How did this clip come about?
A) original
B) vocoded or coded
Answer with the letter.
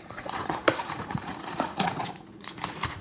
B